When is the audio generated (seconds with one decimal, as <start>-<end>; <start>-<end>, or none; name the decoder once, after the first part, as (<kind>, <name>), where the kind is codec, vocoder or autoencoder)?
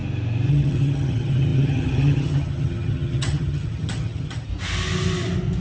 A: 0.5-4.5 (vocoder, HiFi-GAN)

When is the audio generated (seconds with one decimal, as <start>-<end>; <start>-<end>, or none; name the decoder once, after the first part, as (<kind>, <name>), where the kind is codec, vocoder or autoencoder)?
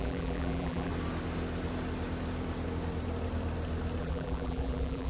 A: 0.0-0.9 (vocoder, BigVGAN v2); 4.0-5.1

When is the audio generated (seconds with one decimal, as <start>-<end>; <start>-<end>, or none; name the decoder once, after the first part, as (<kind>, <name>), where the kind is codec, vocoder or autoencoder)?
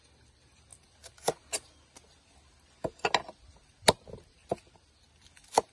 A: none